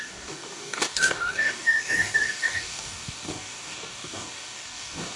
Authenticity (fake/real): fake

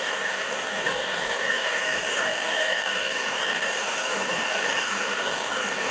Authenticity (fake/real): fake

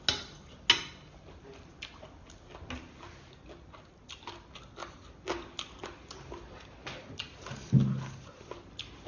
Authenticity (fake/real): real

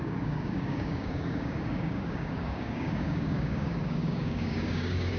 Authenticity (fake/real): fake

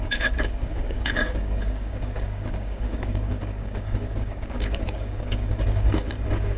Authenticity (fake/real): fake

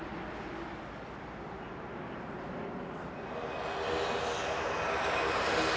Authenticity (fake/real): real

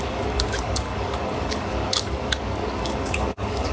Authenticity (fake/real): fake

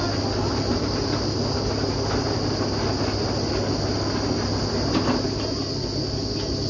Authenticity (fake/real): real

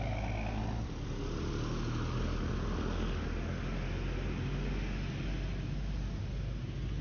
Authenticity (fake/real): real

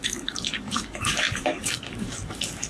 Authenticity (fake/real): fake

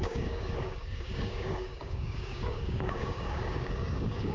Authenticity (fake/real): fake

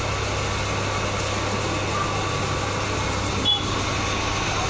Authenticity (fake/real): real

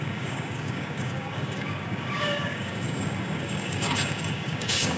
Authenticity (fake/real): fake